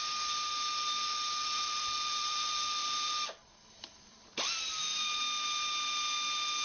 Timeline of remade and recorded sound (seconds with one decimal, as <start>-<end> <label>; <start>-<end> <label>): 0.0-1.4 recorded; 1.4-5.2 remade; 5.2-6.6 recorded